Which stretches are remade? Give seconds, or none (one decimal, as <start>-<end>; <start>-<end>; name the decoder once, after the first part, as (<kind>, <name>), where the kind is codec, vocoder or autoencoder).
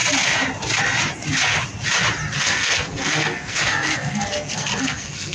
2.4-5.3 (codec, SNAC)